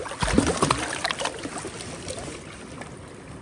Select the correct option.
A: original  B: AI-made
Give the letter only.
A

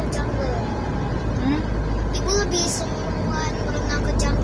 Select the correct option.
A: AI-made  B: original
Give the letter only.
B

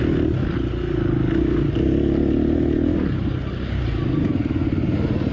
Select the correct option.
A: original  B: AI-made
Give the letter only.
A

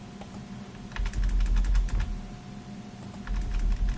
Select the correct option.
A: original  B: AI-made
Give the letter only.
A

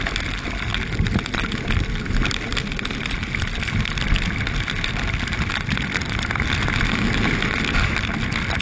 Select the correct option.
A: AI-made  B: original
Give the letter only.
B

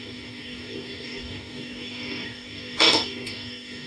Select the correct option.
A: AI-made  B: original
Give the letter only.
A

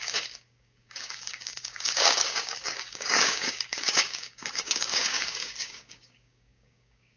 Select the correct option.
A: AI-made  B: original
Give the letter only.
A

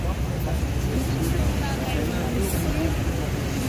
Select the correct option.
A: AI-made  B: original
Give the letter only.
B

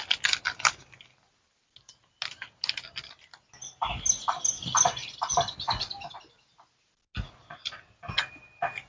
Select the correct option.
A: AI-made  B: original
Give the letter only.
B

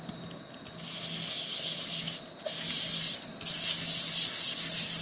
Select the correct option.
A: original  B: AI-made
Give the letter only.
A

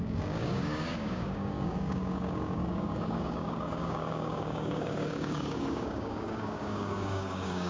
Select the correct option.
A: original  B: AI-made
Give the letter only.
B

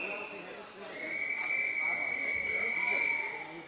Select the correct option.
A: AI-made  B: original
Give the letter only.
B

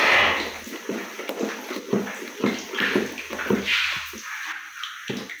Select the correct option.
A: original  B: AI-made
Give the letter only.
A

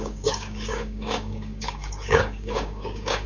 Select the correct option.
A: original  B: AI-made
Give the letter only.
B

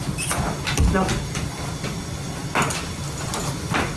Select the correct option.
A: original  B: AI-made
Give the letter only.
A